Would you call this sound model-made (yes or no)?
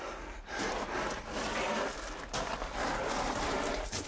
no